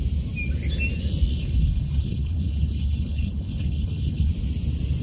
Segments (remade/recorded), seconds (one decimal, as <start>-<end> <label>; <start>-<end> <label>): 0.0-1.3 recorded; 1.3-4.3 remade; 4.3-5.0 recorded